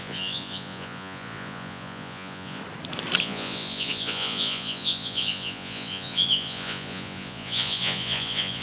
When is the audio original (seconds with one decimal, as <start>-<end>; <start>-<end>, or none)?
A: 2.6-3.2